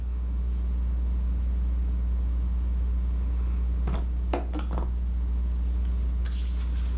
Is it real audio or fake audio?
real